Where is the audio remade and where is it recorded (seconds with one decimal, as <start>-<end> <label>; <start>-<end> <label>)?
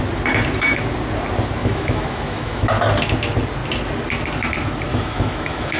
0.0-1.6 recorded; 1.6-2.7 remade; 2.7-4.9 recorded; 4.9-5.8 remade